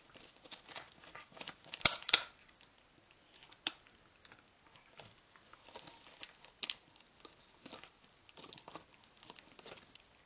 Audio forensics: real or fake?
real